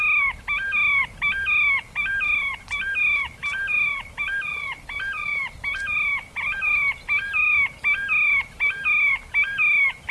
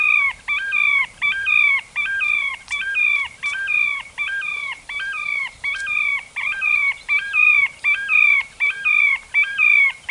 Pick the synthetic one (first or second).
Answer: second